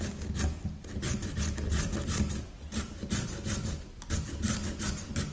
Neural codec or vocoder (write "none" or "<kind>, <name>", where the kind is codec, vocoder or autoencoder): none